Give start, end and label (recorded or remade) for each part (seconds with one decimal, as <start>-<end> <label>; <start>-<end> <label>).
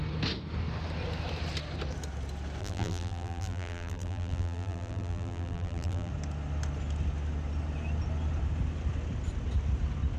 0.0-2.6 recorded; 2.6-6.1 remade; 6.1-10.2 recorded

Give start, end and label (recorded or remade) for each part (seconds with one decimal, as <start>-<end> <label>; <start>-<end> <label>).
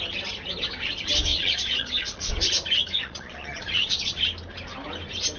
0.0-1.3 recorded; 1.3-2.3 remade; 2.3-3.0 recorded; 3.0-4.2 remade; 4.2-5.4 recorded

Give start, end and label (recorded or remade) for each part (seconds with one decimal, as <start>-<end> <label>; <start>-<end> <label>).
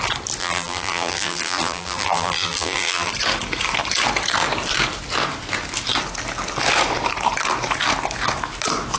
0.0-0.4 recorded; 0.4-3.1 remade; 3.1-9.0 recorded